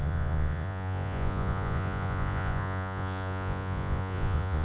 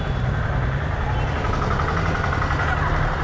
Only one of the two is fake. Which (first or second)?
first